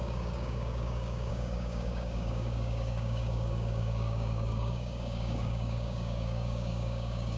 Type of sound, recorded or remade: remade